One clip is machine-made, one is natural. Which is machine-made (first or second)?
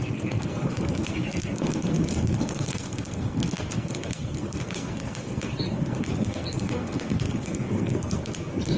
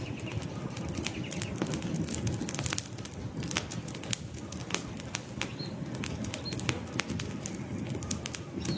first